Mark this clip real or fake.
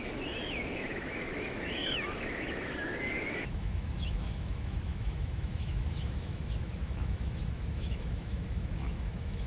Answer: fake